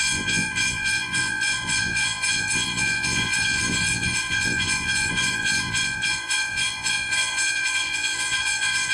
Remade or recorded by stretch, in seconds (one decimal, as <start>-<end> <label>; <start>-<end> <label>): 0.0-8.9 remade